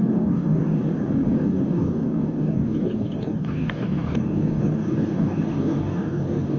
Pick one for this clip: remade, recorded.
remade